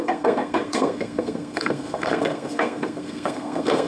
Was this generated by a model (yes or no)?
yes